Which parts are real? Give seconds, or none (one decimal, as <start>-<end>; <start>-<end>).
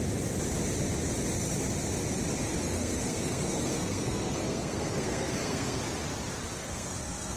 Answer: 0.0-2.6; 5.8-6.6